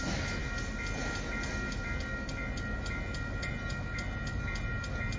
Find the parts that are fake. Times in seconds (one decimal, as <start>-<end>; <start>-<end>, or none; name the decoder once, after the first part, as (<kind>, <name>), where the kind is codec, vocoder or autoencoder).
none